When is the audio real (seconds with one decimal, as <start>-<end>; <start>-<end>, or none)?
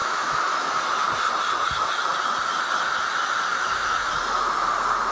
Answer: 0.7-3.5; 4.1-5.1